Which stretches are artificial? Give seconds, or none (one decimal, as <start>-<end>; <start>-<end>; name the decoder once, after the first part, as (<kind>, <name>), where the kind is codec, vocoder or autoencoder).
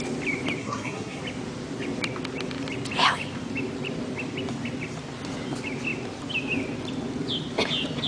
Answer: 0.6-1.2 (codec, SNAC)